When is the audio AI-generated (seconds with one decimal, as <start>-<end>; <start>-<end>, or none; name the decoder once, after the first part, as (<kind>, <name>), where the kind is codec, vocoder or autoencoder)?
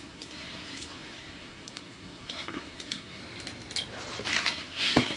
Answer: 0.0-3.2 (codec, SNAC); 4.3-5.2